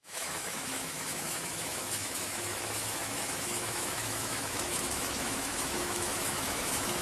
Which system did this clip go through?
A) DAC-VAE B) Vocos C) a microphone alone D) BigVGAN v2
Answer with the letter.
A